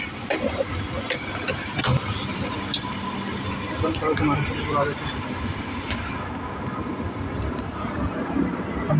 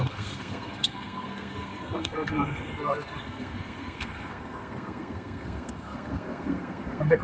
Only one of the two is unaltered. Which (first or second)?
first